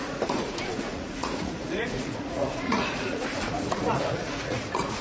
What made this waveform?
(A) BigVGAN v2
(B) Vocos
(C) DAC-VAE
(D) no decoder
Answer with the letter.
B